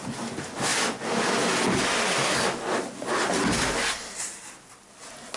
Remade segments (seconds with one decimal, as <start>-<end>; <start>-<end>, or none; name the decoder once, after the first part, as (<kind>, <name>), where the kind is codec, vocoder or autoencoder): none